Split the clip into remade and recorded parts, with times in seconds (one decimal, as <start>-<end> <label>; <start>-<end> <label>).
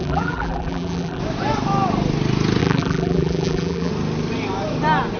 0.0-1.2 remade; 1.2-2.6 recorded; 2.6-3.9 remade; 3.9-5.2 recorded